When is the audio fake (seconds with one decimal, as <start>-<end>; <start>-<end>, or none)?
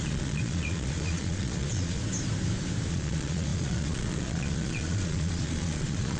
0.0-2.0; 2.9-6.2